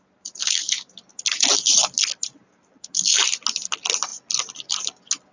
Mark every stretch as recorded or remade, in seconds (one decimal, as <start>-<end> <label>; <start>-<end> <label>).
0.0-5.3 recorded